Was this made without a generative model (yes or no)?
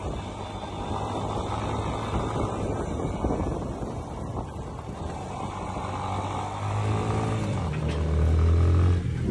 yes